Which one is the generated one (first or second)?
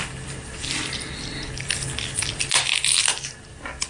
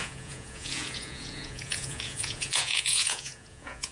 second